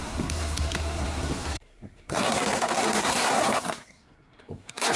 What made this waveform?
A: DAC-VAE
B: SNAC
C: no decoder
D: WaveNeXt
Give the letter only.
B